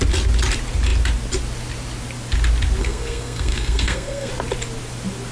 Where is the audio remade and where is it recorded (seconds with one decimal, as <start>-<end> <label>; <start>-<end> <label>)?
0.0-2.8 recorded; 2.8-4.3 remade; 4.3-5.3 recorded